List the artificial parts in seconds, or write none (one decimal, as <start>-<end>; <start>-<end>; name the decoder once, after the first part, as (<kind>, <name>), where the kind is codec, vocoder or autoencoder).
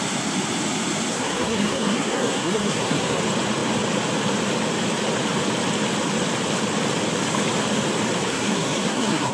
1.1-3.2 (codec, SNAC); 8.3-9.3